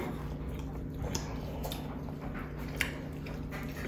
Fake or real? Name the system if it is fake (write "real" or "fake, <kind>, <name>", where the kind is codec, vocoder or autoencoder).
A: real